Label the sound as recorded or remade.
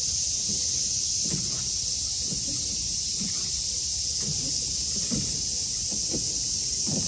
remade